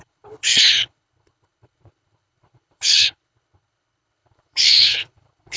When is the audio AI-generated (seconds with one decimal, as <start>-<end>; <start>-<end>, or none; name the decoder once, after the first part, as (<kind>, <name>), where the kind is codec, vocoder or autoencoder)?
0.0-5.6 (codec, HILCodec)